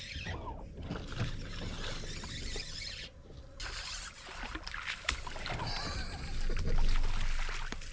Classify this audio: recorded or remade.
recorded